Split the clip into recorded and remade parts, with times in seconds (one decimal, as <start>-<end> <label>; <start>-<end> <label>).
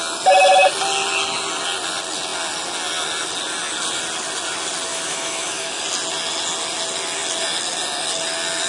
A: 0.0-4.9 recorded; 4.9-5.8 remade; 5.8-8.7 recorded